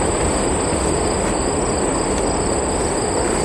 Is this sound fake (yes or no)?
no